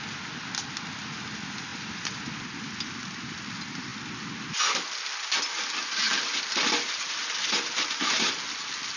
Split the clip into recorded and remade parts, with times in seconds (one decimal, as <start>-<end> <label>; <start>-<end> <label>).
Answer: 0.0-9.0 recorded